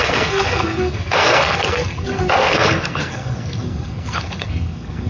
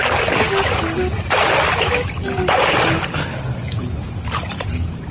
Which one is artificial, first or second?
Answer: first